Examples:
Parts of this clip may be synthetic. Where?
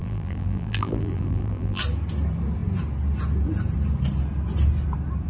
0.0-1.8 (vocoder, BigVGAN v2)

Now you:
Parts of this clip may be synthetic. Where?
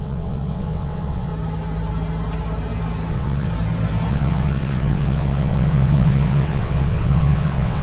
0.0-1.3 (vocoder, WaveNeXt); 3.1-3.5; 4.1-7.8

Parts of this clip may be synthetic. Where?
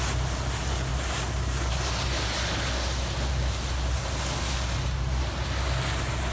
none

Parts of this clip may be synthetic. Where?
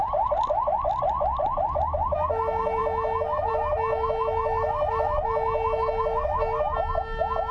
none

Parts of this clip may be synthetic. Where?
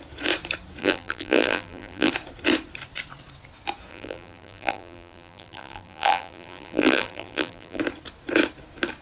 0.8-2.1 (vocoder, BigVGAN v2); 3.9-7.8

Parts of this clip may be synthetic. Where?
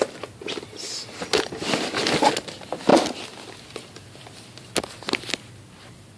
none